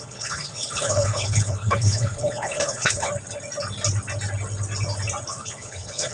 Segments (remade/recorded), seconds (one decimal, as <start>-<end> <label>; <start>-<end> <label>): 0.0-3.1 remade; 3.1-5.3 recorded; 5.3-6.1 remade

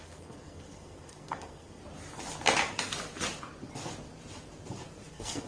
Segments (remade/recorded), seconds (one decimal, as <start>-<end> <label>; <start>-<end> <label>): 0.0-1.8 remade; 1.8-5.1 recorded; 5.1-5.5 remade

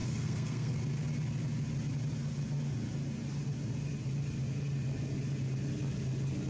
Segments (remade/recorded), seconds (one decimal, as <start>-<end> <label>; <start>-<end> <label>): 0.0-0.7 remade; 0.7-6.5 recorded

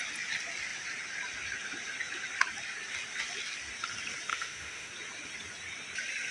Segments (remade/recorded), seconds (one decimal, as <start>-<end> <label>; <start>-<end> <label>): 0.0-4.3 recorded; 4.3-4.9 remade; 4.9-6.3 recorded

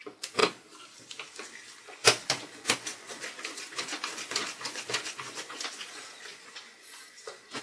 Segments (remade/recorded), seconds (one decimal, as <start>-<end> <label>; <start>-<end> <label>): 0.0-0.4 remade; 0.4-1.8 recorded; 1.8-7.6 remade